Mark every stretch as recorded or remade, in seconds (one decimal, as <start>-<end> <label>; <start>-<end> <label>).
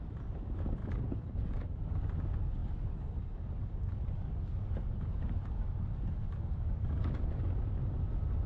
0.0-0.8 recorded; 0.8-2.0 remade; 2.0-2.6 recorded; 2.6-7.5 remade; 7.5-8.5 recorded